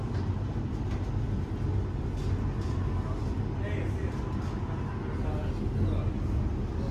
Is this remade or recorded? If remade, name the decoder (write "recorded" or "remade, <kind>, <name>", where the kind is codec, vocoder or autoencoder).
recorded